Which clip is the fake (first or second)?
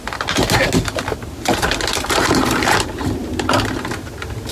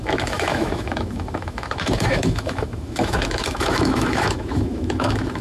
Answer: second